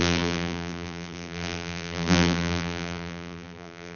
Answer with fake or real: fake